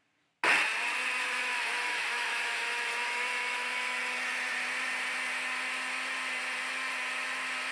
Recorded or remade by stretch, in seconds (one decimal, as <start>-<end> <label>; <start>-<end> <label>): 0.0-1.4 recorded; 1.4-4.0 remade; 4.0-7.7 recorded